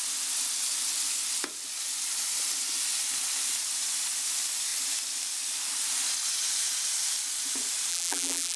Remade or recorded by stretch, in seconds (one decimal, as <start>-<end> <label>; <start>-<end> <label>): 0.0-7.9 recorded; 7.9-8.6 remade